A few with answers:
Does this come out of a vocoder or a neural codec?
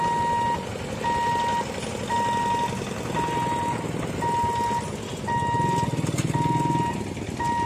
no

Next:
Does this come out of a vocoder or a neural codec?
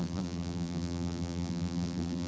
yes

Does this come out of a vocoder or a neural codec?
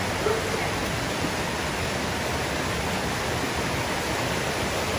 no